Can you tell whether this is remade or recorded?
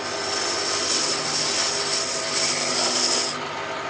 recorded